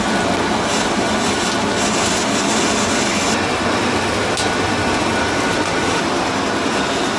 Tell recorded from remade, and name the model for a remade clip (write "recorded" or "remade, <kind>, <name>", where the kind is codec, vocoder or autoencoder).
recorded